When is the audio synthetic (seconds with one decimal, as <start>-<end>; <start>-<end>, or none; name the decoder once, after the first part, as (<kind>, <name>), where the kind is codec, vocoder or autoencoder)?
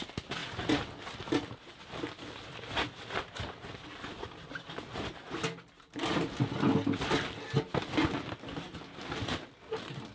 none